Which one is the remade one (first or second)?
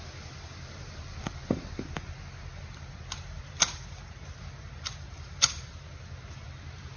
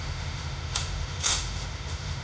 second